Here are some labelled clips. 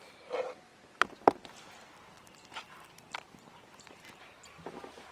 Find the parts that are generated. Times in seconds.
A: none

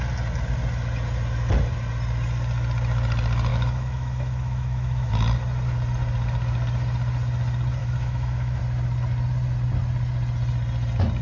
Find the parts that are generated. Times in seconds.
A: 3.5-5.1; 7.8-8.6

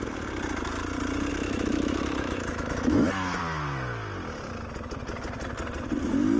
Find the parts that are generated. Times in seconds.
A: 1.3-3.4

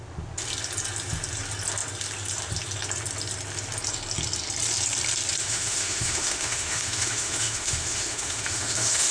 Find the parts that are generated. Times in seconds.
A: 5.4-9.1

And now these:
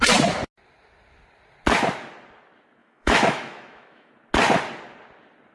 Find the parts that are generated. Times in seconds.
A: 2.8-4.1

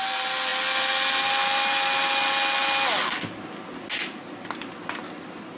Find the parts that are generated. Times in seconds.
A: none

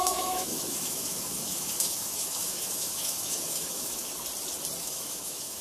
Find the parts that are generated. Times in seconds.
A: 0.0-4.0; 4.8-5.6